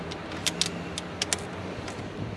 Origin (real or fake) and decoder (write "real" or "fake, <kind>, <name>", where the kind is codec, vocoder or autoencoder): real